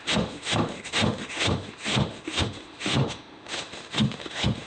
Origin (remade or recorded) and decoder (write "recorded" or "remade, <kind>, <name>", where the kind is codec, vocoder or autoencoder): remade, autoencoder, DAC-VAE